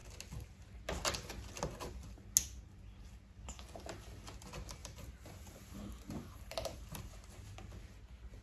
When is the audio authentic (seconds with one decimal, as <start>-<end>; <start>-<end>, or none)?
0.0-4.8; 7.1-8.4